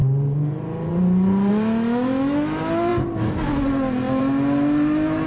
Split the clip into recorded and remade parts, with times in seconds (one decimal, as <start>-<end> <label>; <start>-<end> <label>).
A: 0.0-1.5 remade; 1.5-5.3 recorded